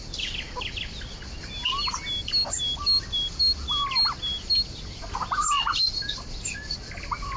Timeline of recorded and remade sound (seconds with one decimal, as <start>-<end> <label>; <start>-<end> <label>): 0.0-7.4 recorded